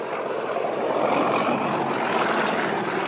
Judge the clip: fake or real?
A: real